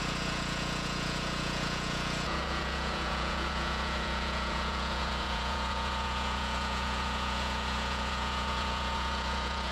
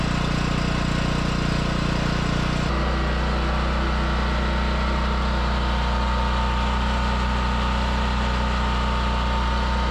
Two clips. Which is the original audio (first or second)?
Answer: second